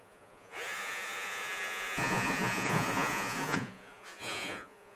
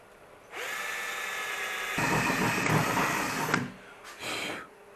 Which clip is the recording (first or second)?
second